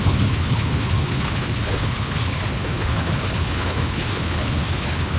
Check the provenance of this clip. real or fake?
fake